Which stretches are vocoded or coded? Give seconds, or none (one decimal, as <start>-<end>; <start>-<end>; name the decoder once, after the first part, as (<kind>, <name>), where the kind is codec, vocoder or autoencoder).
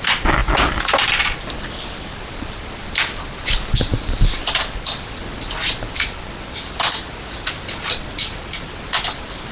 none